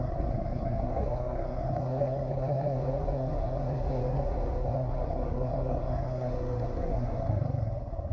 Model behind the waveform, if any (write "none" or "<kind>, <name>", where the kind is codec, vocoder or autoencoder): codec, SNAC